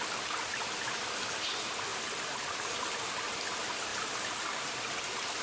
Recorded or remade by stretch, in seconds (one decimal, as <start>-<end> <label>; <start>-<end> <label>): 0.0-5.4 recorded